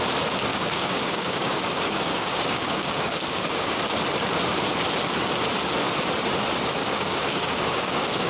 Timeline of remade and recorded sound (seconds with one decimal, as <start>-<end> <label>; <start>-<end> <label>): 0.0-0.5 recorded; 0.5-3.8 remade; 3.8-6.8 recorded; 6.8-8.3 remade